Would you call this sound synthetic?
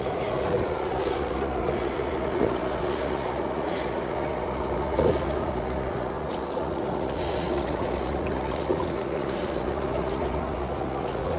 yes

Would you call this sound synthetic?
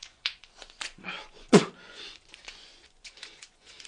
yes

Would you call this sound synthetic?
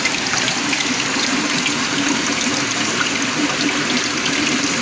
no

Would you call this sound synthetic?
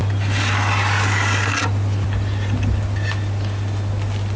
no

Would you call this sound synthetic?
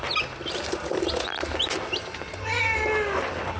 no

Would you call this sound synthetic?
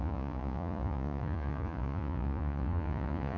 yes